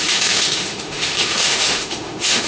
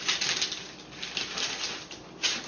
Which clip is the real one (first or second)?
second